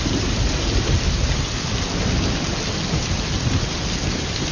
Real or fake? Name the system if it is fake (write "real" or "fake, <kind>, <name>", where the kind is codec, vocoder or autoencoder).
real